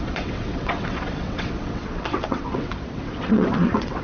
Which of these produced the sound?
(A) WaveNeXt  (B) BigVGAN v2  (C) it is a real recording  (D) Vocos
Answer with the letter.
A